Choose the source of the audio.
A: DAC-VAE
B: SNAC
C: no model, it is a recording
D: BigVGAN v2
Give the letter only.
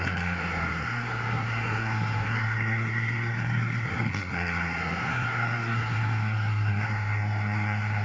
B